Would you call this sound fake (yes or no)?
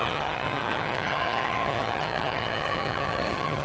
yes